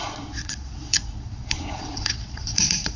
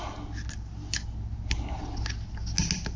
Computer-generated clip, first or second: first